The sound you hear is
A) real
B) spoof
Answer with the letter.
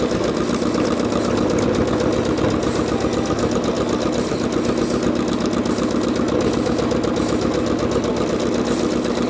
A